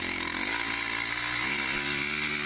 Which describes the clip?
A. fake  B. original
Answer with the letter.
B